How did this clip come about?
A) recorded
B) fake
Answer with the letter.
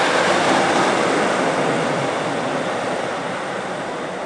A